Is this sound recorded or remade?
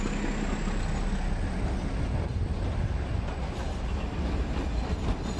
recorded